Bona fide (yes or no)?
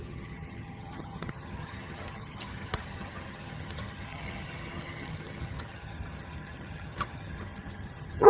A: no